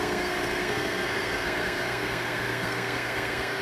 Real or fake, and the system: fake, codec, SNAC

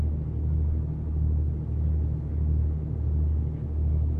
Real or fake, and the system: real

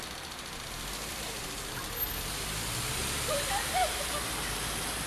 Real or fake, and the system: real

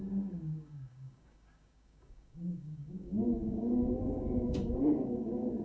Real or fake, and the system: fake, codec, DAC